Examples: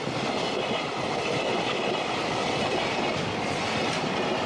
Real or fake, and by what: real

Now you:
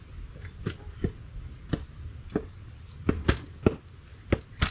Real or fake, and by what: real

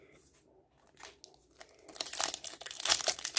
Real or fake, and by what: real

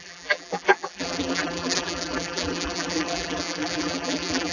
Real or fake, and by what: fake, vocoder, BigVGAN v2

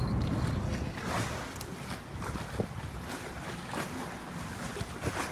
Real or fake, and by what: real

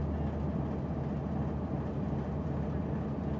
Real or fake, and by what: real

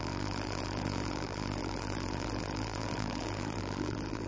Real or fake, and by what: fake, vocoder, BigVGAN v2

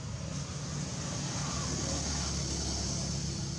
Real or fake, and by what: real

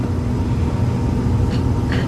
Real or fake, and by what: real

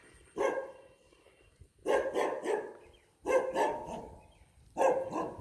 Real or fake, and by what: real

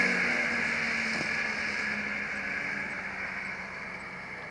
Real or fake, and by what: real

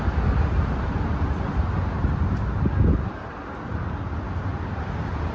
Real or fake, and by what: real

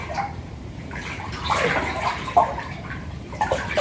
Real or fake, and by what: fake, vocoder, BigVGAN v2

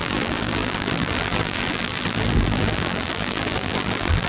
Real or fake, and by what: fake, vocoder, BigVGAN v2